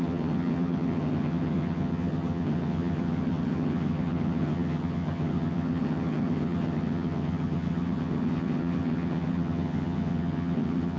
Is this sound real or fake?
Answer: fake